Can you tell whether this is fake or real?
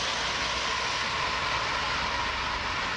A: real